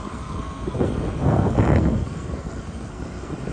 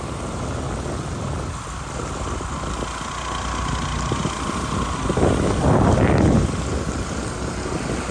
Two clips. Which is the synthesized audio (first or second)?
first